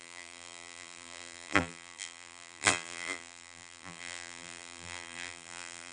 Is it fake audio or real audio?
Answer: fake